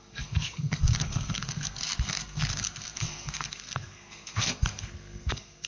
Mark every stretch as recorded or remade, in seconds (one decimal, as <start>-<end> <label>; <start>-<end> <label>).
0.0-5.7 remade

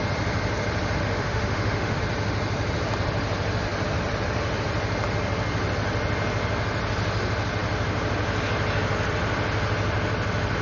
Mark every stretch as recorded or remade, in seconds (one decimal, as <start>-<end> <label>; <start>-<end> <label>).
0.0-1.0 recorded; 1.0-2.0 remade; 2.0-10.6 recorded

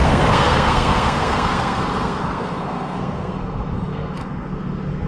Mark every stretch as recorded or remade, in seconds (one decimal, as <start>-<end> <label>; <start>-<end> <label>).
0.0-5.1 remade

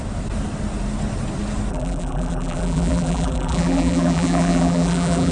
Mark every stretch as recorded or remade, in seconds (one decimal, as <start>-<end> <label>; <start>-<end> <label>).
0.0-1.7 recorded; 1.7-5.3 remade

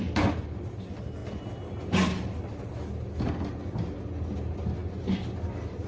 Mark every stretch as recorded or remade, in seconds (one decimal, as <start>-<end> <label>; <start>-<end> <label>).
0.0-5.9 recorded

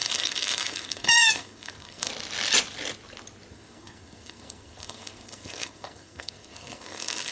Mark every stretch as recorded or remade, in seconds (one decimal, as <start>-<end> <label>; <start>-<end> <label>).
0.0-2.1 remade; 2.1-3.5 recorded; 3.5-7.3 remade